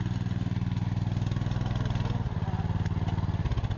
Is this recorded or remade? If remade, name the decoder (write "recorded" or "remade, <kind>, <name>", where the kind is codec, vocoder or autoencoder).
recorded